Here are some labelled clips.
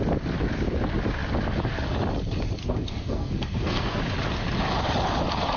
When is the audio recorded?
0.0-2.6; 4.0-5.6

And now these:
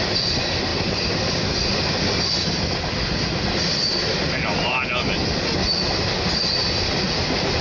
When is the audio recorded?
0.0-7.6

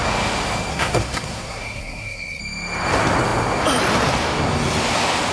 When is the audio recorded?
0.0-0.7; 2.4-5.3

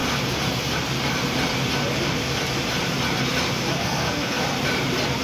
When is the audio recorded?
0.0-3.8; 4.4-5.2

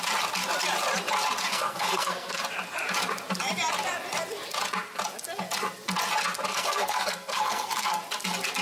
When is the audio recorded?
0.0-1.5; 2.4-6.5; 8.0-8.6

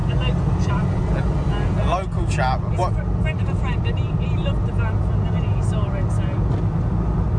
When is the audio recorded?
0.0-7.4

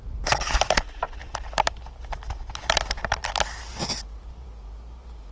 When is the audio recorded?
0.0-5.3

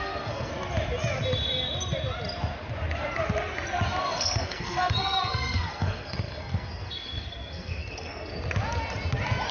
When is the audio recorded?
0.5-4.0; 8.3-9.5